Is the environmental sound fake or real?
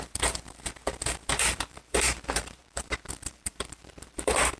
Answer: fake